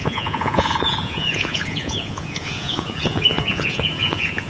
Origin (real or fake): fake